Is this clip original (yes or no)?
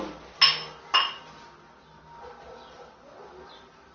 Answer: yes